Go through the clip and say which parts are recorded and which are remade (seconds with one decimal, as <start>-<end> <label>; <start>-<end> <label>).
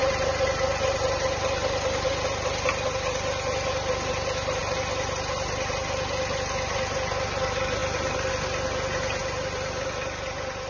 0.0-10.7 recorded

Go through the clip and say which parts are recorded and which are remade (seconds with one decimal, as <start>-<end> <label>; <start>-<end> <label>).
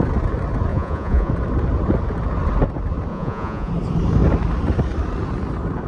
0.0-0.7 recorded; 0.7-1.3 remade; 1.3-3.1 recorded; 3.1-3.7 remade; 3.7-5.9 recorded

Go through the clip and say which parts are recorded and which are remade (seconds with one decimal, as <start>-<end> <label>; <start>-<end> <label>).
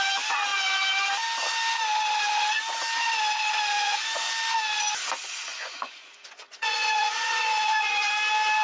0.0-3.8 recorded; 3.8-4.3 remade; 4.3-5.5 recorded; 5.5-8.1 remade; 8.1-8.6 recorded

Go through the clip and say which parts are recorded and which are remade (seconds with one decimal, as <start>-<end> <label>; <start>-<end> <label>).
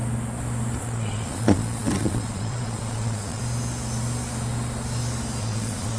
0.0-0.8 recorded; 0.8-3.4 remade; 3.4-5.4 recorded; 5.4-6.0 remade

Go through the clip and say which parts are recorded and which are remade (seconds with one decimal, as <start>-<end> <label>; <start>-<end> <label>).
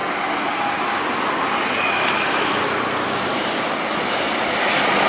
0.0-5.1 recorded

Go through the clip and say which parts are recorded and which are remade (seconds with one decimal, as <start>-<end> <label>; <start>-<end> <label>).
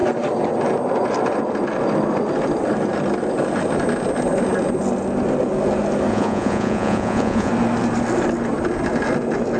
0.0-6.1 recorded; 6.1-7.5 remade; 7.5-9.6 recorded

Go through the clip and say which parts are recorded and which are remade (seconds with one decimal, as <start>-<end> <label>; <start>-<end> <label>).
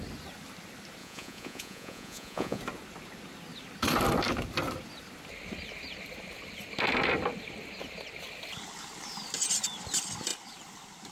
0.0-1.0 recorded; 1.0-2.6 remade; 2.6-11.1 recorded